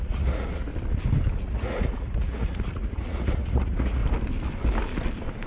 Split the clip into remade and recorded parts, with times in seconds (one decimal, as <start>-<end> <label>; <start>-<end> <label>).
0.0-0.7 remade; 0.7-1.3 recorded; 1.3-4.0 remade; 4.0-5.5 recorded